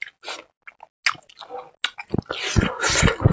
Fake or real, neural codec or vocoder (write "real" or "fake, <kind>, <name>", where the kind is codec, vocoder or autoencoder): real